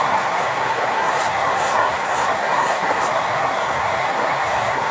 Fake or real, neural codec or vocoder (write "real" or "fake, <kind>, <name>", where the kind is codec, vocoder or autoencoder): fake, codec, SNAC